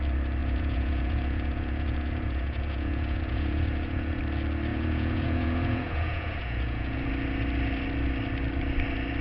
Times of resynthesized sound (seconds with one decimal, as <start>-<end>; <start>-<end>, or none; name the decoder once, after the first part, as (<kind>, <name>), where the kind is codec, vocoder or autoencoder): 0.4-4.2 (vocoder, Vocos); 4.7-7.1